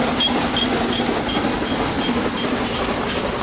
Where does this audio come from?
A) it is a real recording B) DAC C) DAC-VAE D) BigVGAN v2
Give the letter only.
A